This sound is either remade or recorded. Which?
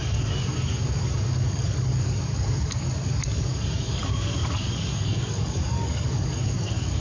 remade